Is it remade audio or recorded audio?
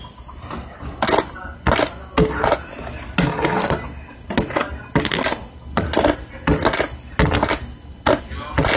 recorded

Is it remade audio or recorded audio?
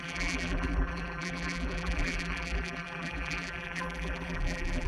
remade